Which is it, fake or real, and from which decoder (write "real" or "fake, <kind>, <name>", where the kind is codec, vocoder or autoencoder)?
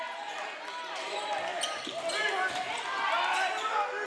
real